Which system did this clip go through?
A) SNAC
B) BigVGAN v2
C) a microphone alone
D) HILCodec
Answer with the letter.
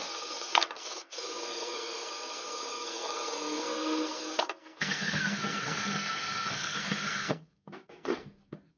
A